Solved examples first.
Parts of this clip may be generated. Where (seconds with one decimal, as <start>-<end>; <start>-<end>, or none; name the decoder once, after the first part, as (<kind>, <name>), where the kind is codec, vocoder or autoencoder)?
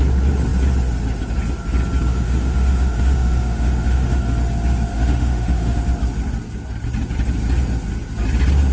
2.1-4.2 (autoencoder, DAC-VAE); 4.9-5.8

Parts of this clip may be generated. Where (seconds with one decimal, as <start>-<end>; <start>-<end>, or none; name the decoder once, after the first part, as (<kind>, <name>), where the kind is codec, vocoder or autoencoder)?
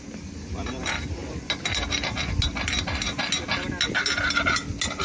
none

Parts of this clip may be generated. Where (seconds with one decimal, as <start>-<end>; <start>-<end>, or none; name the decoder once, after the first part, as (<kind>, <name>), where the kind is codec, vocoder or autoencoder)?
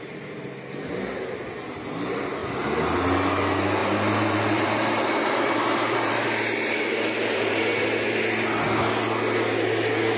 3.8-7.6 (vocoder, BigVGAN v2)